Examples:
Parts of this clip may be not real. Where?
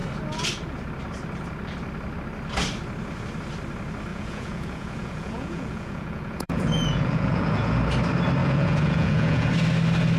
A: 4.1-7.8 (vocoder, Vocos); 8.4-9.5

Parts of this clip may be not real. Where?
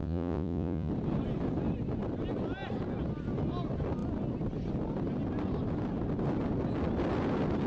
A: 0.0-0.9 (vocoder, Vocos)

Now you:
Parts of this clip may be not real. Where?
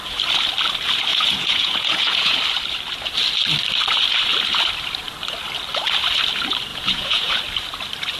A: 1.1-2.4 (vocoder, Vocos); 6.7-7.4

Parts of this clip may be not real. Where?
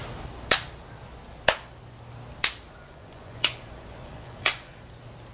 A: 2.7-4.7 (vocoder, Vocos)